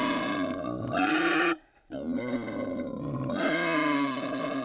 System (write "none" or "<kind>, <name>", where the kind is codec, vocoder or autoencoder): none